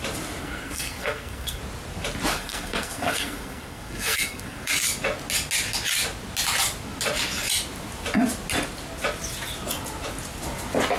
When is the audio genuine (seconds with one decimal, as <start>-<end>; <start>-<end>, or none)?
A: 0.0-0.4; 1.6-2.3; 4.7-11.0

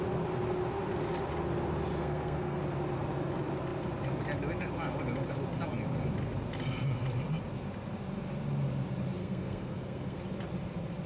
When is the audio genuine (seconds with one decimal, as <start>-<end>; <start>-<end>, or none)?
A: 0.0-2.0; 2.6-9.2; 10.2-11.1

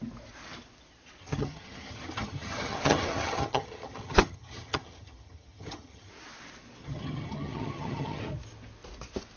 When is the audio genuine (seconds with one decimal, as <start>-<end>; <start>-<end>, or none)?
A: 0.0-1.2; 6.1-6.8; 8.2-9.4

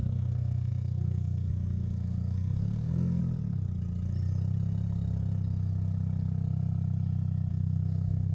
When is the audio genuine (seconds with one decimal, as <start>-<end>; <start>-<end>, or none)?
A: 3.2-7.5

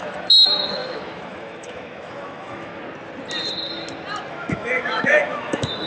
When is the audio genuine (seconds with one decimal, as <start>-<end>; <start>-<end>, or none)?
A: 2.7-4.3

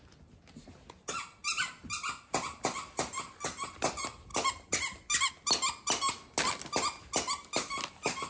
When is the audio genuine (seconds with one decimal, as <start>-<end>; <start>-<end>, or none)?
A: 0.0-8.3

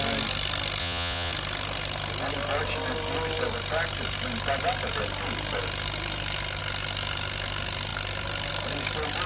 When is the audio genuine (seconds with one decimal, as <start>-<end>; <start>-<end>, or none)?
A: 0.0-0.8; 1.3-9.3